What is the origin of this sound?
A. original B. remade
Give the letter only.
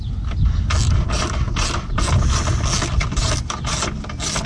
A